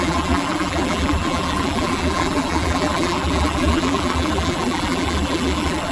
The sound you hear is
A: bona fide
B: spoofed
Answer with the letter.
B